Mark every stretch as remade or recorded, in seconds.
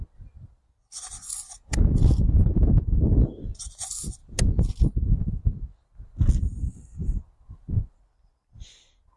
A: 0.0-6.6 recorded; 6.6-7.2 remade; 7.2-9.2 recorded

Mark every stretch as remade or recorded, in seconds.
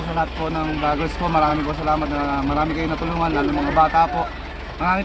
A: 0.0-1.5 remade; 1.5-4.5 recorded; 4.5-5.0 remade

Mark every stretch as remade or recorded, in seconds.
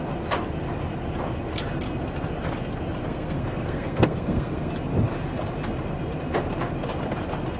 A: 0.0-3.0 recorded; 3.0-4.7 remade; 4.7-7.6 recorded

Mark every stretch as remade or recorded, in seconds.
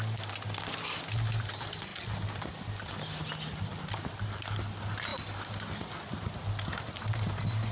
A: 0.0-7.7 recorded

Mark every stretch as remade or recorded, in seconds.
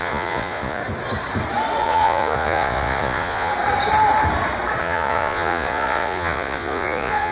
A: 0.0-0.8 remade; 0.8-1.8 recorded; 1.8-3.5 remade; 3.5-4.8 recorded; 4.8-7.3 remade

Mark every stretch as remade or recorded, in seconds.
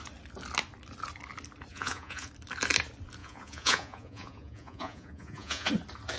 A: 0.0-1.7 recorded; 1.7-2.3 remade; 2.3-3.2 recorded; 3.2-5.7 remade; 5.7-6.2 recorded